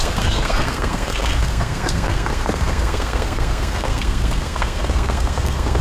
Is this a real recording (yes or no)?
no